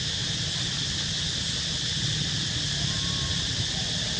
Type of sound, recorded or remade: recorded